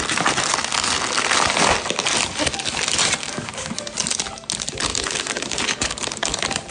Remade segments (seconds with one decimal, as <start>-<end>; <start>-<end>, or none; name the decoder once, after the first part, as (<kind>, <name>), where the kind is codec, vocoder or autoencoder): 3.2-3.7 (codec, DAC); 4.9-6.3